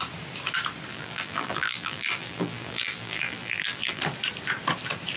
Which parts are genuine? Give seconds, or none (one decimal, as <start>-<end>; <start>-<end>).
0.0-0.9; 4.0-5.2